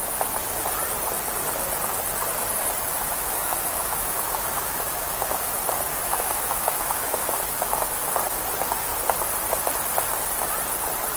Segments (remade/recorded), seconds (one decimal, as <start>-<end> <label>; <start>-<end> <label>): 0.0-2.9 recorded; 2.9-5.5 remade; 5.5-5.9 recorded; 5.9-8.1 remade; 8.1-11.2 recorded